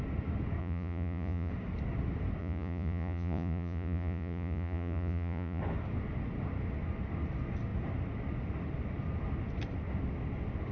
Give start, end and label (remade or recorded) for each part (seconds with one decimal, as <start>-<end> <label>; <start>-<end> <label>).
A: 0.0-0.6 recorded; 0.6-1.5 remade; 1.5-2.4 recorded; 2.4-5.6 remade; 5.6-10.7 recorded